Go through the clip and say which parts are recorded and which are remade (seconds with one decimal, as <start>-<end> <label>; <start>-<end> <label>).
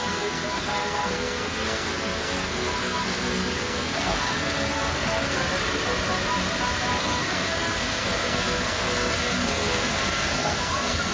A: 0.0-5.4 remade; 5.4-7.0 recorded; 7.0-11.1 remade